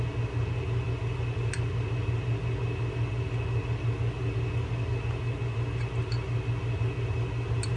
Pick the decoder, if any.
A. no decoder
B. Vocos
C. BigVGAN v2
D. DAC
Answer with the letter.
A